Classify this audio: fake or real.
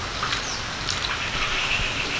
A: fake